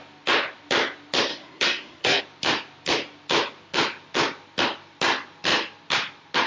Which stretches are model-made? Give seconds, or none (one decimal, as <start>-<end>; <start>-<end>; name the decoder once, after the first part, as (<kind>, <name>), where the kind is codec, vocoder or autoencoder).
1.3-2.2 (codec, SNAC)